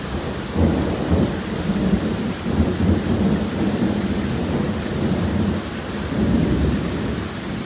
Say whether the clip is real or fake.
real